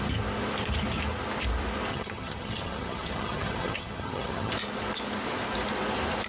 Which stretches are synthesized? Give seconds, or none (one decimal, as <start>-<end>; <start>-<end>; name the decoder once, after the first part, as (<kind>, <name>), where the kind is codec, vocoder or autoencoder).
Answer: 1.9-4.5 (vocoder, HiFi-GAN)